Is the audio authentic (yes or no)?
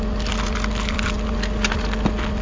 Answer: yes